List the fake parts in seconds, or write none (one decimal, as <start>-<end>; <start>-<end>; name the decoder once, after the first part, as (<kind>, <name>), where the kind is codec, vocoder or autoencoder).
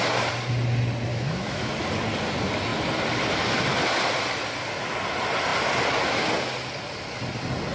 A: 1.1-1.7 (autoencoder, DAC-VAE)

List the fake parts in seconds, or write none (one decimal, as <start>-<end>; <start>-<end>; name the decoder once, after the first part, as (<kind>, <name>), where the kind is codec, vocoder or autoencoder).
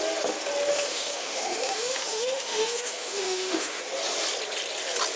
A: 0.7-3.8 (autoencoder, DAC-VAE)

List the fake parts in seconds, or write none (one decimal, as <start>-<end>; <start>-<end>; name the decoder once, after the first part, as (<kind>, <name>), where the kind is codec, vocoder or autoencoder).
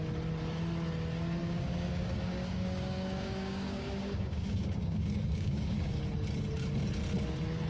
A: 1.4-6.0 (codec, DAC)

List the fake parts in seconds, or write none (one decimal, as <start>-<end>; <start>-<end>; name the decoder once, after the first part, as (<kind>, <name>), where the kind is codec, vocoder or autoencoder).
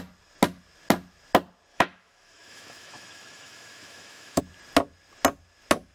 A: 1.7-4.4 (autoencoder, DAC-VAE)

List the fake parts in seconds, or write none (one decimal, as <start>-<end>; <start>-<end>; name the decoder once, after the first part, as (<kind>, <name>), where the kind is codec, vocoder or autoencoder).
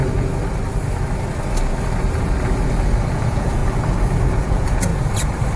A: 3.1-3.6 (vocoder, Vocos); 4.3-4.9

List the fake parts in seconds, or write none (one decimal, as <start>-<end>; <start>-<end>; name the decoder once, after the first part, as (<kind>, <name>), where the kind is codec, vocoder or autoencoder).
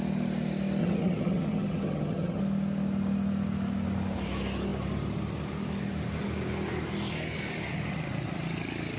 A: 0.8-2.4 (vocoder, HiFi-GAN)